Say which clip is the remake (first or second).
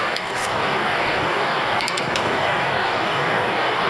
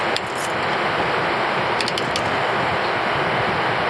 first